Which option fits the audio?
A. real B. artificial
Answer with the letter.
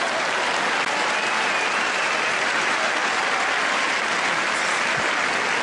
A